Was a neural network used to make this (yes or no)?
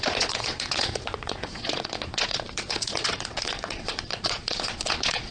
yes